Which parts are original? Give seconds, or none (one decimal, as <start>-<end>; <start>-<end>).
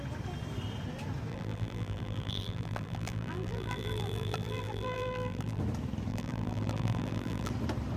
0.0-1.3; 5.6-6.1; 7.5-8.0